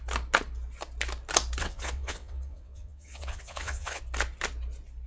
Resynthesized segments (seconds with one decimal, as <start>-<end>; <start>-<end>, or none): 1.6-4.0